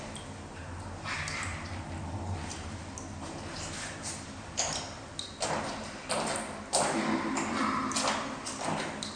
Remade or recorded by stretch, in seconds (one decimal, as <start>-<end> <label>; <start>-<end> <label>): 0.0-9.2 recorded